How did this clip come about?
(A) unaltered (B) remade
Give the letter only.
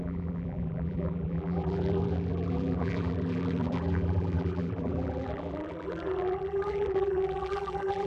B